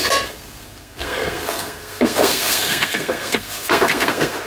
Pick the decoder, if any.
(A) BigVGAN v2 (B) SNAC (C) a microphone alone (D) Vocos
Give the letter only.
B